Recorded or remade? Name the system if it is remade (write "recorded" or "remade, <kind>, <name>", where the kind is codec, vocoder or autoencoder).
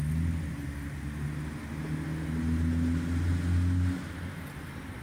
recorded